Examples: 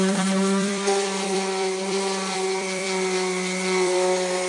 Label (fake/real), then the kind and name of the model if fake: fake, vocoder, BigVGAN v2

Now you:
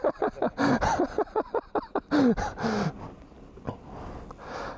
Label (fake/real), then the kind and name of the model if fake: real